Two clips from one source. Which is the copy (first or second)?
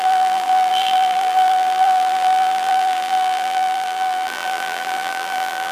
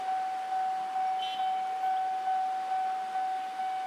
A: first